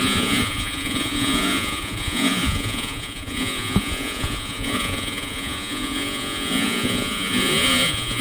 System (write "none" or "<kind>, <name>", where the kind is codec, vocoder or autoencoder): vocoder, Vocos